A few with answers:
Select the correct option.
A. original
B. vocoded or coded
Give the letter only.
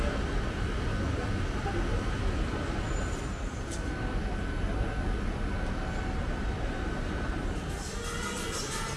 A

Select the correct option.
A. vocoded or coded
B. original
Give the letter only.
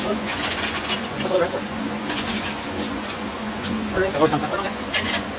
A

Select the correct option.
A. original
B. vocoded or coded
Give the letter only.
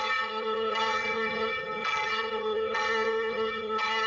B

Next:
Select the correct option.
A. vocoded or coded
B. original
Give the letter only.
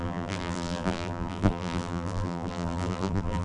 A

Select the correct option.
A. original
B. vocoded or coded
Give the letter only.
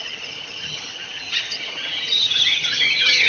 B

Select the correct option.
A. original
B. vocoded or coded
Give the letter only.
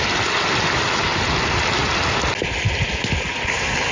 A